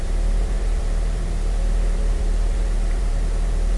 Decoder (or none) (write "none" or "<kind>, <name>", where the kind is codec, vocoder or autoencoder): vocoder, BigVGAN v2